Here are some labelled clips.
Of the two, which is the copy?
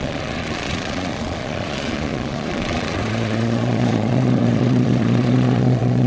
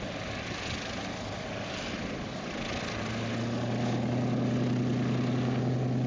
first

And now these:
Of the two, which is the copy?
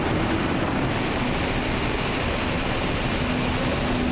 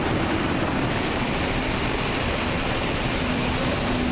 second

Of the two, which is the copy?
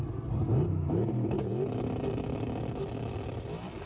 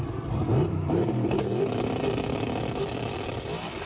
second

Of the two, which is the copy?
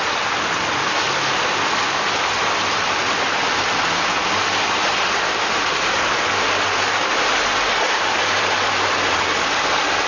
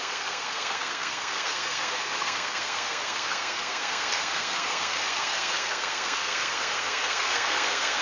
second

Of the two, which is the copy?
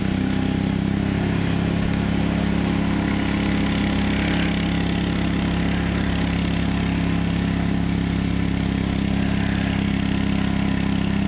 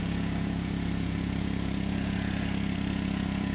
second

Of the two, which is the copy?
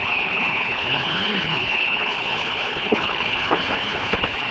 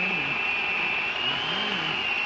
first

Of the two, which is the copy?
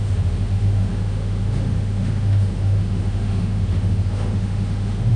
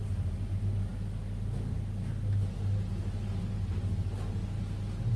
first